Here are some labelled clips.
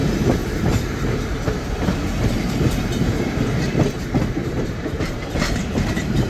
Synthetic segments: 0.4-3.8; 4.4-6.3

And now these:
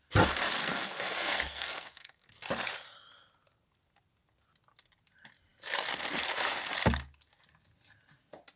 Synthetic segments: 0.6-2.3

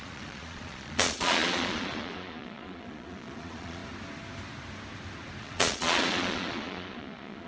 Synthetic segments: 0.0-3.8; 5.4-7.5